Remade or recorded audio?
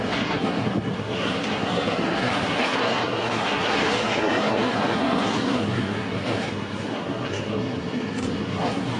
remade